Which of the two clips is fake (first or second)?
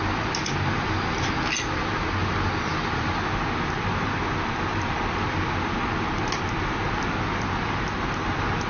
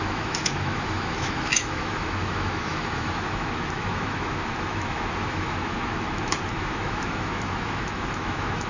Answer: second